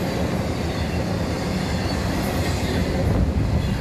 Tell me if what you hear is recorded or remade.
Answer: recorded